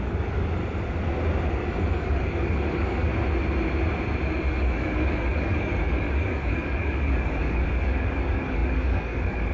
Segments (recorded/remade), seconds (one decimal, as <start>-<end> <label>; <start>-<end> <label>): 0.0-0.6 remade; 0.6-1.5 recorded; 1.5-3.1 remade; 3.1-4.5 recorded; 4.5-9.5 remade